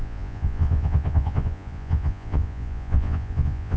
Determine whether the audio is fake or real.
fake